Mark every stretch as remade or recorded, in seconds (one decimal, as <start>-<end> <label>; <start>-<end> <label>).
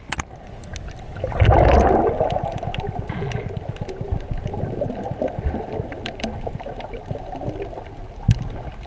0.0-8.9 recorded